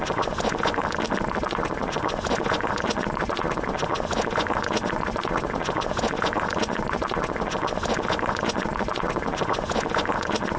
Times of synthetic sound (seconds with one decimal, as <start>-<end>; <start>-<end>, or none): 0.0-0.8; 1.4-10.6